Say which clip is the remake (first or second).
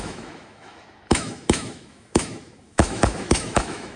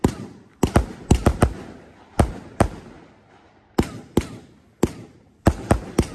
first